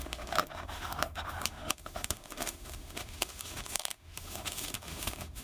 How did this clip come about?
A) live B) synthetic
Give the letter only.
B